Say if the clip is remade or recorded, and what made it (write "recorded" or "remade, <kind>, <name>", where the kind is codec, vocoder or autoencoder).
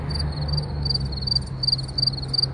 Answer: recorded